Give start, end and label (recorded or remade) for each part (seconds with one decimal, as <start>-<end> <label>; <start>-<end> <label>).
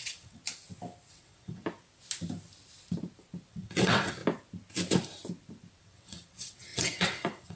0.0-0.4 remade; 0.4-1.1 recorded; 1.1-1.6 remade; 1.6-3.5 recorded; 3.5-4.2 remade; 4.2-5.8 recorded; 5.8-7.6 remade